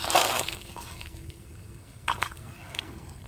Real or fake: fake